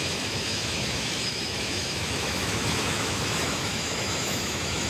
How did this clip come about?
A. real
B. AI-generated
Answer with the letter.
B